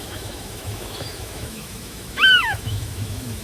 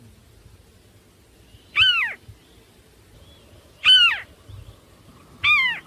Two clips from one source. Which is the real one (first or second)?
second